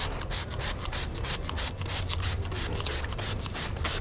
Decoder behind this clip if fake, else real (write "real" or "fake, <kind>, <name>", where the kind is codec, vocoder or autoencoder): real